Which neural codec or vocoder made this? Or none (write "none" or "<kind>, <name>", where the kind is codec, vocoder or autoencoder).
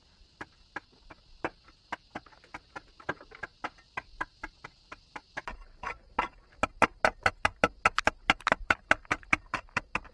none